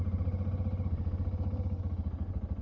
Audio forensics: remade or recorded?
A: recorded